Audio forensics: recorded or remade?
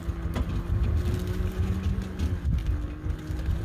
recorded